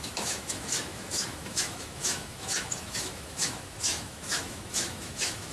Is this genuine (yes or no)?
no